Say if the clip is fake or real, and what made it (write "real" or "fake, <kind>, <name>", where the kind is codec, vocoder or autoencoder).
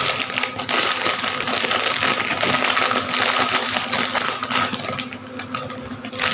real